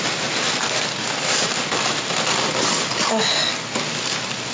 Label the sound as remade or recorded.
recorded